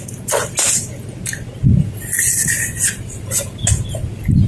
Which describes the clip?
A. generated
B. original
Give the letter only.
B